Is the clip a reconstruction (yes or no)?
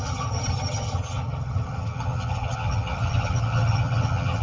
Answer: yes